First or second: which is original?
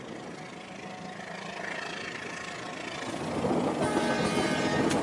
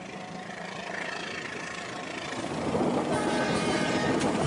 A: first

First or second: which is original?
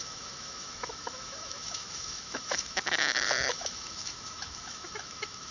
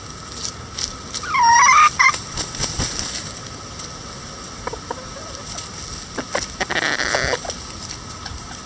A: second